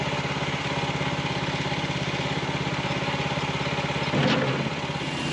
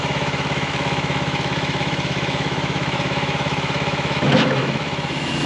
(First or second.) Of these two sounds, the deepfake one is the second